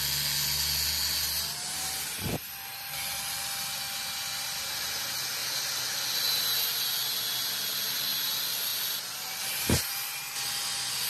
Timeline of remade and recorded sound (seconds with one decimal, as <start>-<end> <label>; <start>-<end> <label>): 0.0-11.1 recorded